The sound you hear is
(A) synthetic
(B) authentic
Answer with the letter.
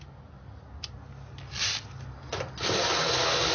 B